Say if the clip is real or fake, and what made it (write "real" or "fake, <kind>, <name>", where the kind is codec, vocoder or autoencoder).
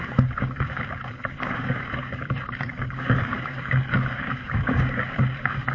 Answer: fake, codec, DAC